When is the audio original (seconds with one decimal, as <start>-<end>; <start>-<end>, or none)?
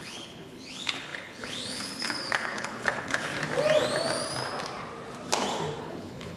3.3-5.8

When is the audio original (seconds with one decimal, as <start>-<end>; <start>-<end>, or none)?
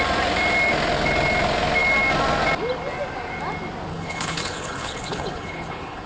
0.0-3.9